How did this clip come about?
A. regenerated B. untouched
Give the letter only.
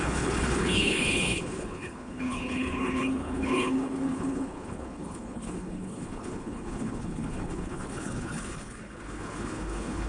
A